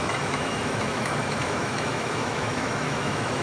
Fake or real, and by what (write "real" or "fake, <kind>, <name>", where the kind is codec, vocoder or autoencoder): fake, autoencoder, DAC-VAE